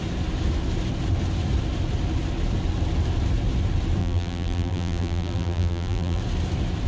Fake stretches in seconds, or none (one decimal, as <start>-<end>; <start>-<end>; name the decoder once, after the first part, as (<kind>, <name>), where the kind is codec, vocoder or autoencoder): 4.0-6.2 (vocoder, BigVGAN v2)